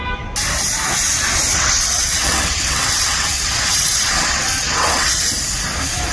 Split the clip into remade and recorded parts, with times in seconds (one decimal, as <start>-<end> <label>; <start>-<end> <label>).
0.0-1.5 recorded; 1.5-5.2 remade; 5.2-6.1 recorded